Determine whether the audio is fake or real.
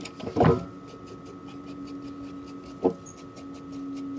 real